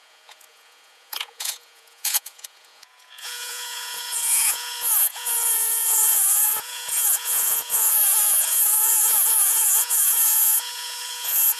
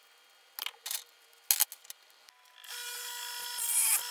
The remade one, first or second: first